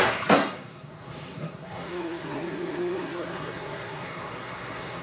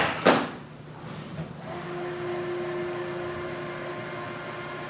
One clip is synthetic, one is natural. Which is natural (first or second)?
second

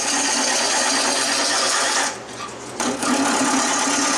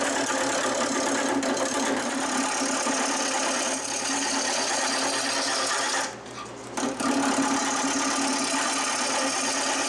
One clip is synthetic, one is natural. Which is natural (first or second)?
second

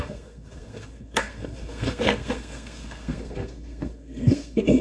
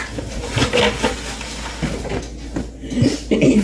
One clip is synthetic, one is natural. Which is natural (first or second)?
second